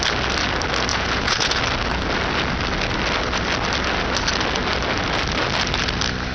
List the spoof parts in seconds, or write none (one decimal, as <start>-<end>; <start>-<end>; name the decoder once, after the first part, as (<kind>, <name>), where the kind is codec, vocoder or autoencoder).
0.9-1.6 (vocoder, Vocos)